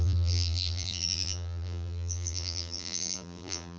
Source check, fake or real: fake